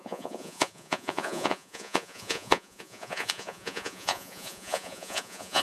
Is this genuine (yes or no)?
no